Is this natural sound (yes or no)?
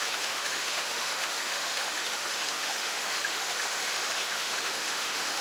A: no